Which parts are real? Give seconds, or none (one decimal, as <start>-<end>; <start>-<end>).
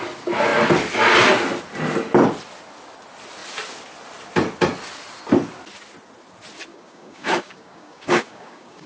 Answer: 0.0-6.7